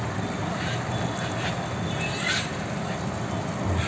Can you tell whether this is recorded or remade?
recorded